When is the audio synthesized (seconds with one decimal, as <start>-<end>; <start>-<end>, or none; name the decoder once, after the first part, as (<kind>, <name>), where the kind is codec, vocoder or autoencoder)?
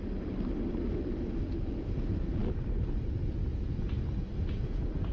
3.5-4.0 (vocoder, Vocos)